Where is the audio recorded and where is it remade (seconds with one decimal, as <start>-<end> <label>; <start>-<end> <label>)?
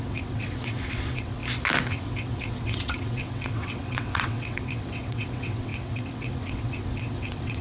0.0-1.4 remade; 1.4-1.9 recorded; 1.9-7.6 remade